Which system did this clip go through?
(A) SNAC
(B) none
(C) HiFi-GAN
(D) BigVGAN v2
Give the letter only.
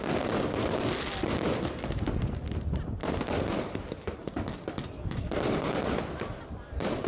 B